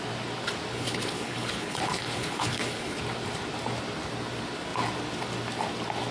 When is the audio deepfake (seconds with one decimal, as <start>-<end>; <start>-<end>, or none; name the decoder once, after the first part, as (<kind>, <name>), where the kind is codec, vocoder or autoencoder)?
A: 0.7-3.0 (codec, HILCodec)